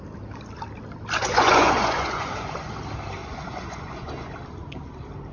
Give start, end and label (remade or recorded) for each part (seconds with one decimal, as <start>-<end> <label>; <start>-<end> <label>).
0.0-1.2 recorded; 1.2-2.7 remade; 2.7-3.2 recorded; 3.2-4.3 remade; 4.3-5.3 recorded